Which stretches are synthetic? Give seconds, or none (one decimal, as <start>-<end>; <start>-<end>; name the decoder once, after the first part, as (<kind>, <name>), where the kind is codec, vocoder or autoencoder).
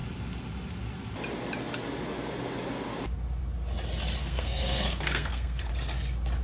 4.2-5.7 (codec, SNAC)